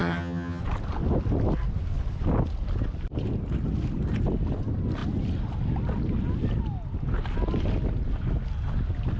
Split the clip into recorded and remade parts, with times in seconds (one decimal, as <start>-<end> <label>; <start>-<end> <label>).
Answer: 0.0-0.6 remade; 0.6-9.2 recorded